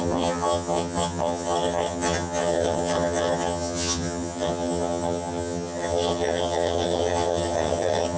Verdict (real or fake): fake